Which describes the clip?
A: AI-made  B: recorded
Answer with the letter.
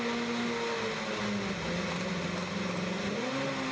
B